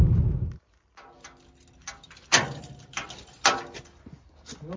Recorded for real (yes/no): yes